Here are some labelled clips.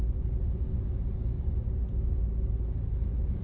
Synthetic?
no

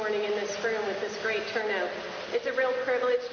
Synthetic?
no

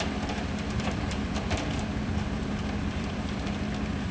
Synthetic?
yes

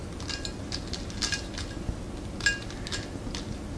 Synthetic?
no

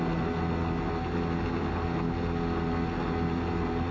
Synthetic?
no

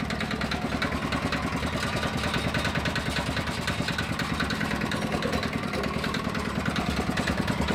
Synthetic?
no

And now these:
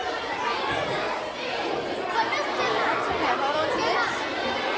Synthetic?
no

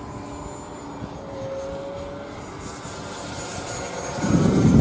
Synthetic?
no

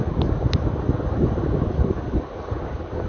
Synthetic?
no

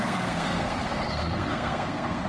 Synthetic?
yes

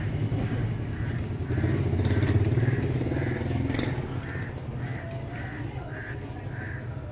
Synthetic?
no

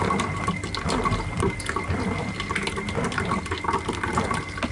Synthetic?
no